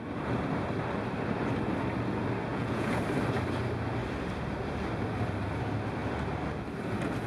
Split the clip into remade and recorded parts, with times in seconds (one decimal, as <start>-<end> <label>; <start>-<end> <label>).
0.0-2.5 recorded; 2.5-3.0 remade; 3.0-7.3 recorded